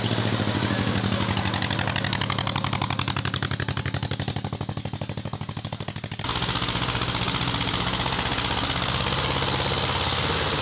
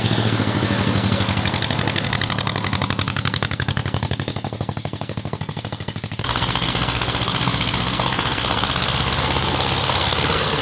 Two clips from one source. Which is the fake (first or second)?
second